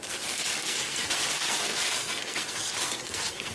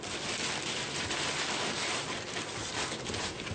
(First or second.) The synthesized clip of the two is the first